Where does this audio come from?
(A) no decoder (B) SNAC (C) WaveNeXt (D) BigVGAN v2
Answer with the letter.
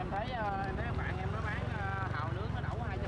A